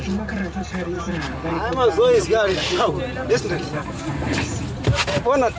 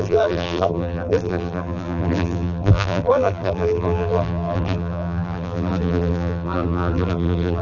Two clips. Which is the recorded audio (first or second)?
first